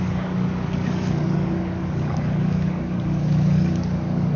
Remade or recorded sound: remade